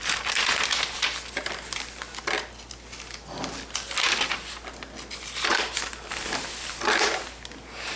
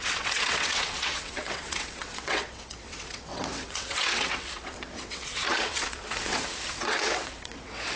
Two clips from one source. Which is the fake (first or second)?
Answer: second